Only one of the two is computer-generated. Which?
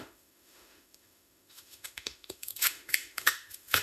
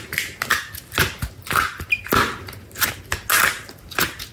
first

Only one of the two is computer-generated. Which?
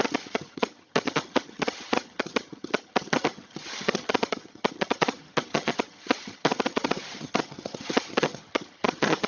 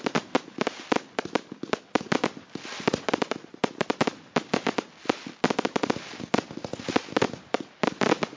first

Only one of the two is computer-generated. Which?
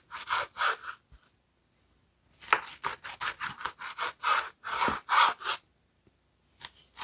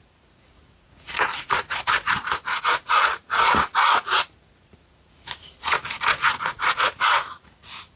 second